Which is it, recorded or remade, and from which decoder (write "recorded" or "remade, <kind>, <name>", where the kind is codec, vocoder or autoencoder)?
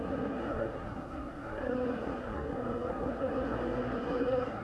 remade, codec, SNAC